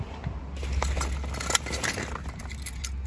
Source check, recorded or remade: recorded